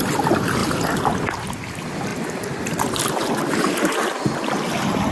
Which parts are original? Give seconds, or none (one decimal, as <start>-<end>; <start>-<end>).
0.0-5.1